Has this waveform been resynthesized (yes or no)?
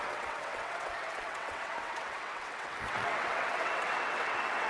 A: yes